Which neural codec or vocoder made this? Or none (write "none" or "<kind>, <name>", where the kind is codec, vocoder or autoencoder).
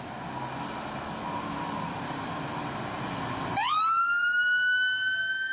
none